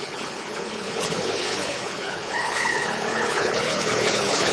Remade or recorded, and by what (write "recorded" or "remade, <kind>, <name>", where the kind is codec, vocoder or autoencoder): remade, codec, HILCodec